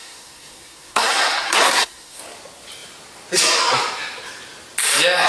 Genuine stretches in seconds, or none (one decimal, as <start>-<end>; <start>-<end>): 2.2-5.3